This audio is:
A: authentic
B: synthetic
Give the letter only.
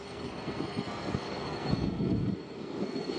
B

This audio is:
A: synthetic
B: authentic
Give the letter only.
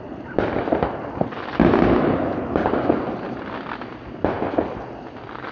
B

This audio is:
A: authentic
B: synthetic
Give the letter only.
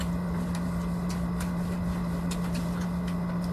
A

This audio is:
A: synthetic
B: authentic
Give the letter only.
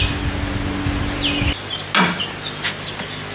B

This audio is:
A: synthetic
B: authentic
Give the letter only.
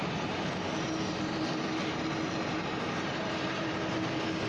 B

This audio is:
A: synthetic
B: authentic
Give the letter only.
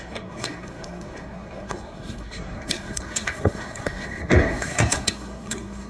A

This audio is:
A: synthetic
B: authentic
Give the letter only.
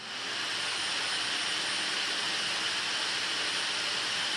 B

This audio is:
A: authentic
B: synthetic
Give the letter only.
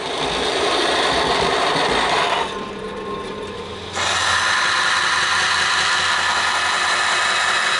A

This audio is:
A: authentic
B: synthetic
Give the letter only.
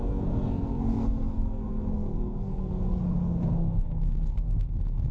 B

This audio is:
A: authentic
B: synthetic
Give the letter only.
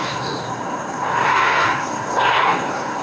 B